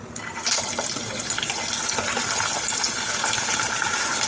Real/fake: real